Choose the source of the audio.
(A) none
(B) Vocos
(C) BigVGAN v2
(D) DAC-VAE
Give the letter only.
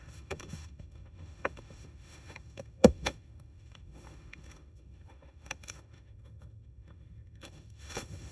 D